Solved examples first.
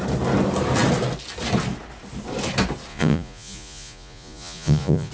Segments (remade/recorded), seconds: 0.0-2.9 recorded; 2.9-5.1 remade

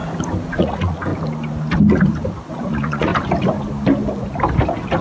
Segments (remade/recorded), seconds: 0.0-0.6 recorded; 0.6-1.1 remade; 1.1-2.5 recorded; 2.5-3.1 remade; 3.1-5.0 recorded

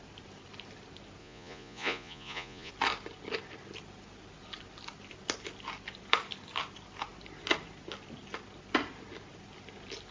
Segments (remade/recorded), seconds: 0.0-1.2 recorded; 1.2-2.7 remade; 2.7-10.1 recorded

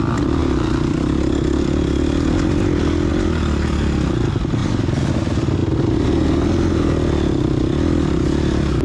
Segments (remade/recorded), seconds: 0.0-8.8 recorded

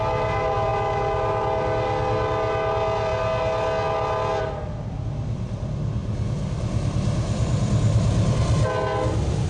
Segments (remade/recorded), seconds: 0.0-9.5 recorded

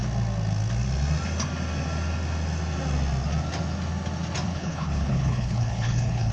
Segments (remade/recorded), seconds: 0.0-4.5 recorded; 4.5-6.3 remade